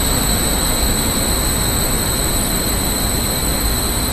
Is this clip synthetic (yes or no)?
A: no